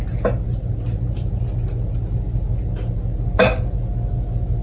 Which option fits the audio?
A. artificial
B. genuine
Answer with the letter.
B